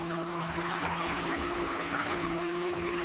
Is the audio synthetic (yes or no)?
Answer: yes